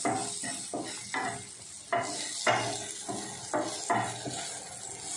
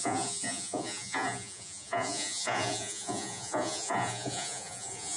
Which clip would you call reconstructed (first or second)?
second